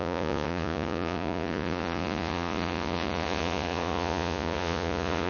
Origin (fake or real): fake